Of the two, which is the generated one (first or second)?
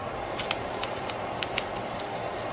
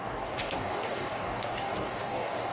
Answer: second